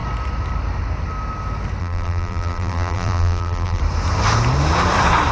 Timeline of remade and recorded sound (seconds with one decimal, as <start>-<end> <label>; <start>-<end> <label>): 0.0-1.8 recorded; 1.8-3.8 remade; 3.8-5.3 recorded